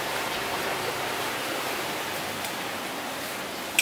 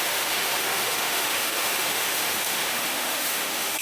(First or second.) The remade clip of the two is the second